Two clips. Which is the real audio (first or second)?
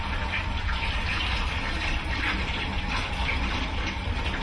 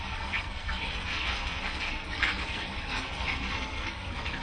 first